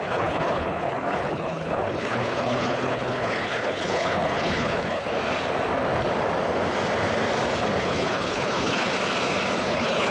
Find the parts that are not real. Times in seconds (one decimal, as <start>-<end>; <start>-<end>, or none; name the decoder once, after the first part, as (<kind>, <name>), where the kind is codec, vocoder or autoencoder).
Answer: 0.0-5.1 (codec, HILCodec); 7.8-8.9; 9.6-10.1